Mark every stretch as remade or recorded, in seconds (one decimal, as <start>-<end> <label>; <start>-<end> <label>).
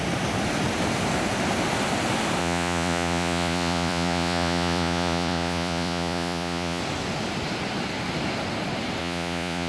0.0-2.4 recorded; 2.4-6.8 remade; 6.8-9.0 recorded; 9.0-9.7 remade